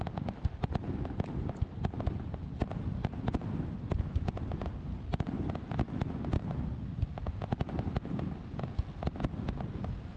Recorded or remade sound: recorded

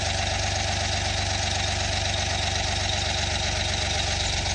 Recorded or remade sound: recorded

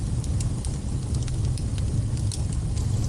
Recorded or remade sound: recorded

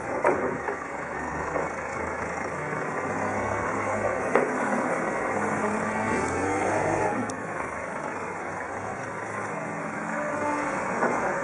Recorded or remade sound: remade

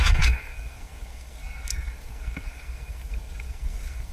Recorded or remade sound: remade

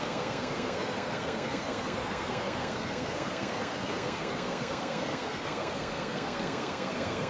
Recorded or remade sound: remade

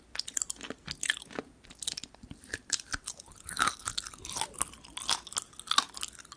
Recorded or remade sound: recorded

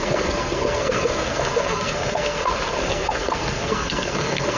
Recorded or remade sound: remade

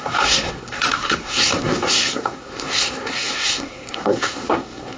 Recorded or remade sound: remade